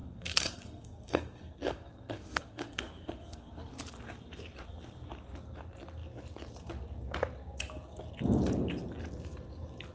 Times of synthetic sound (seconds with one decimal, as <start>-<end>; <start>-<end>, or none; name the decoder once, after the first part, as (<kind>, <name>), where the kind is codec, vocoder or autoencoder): 0.0-3.7 (codec, SNAC)